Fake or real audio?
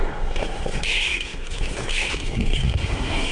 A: fake